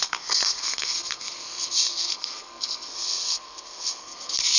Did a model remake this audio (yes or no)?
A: yes